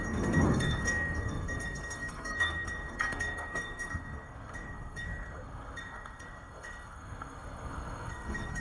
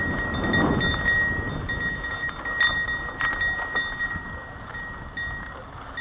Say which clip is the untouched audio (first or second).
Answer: second